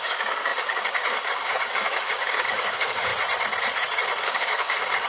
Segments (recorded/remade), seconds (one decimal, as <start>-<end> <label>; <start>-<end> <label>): 0.0-3.1 remade; 3.1-4.2 recorded; 4.2-5.1 remade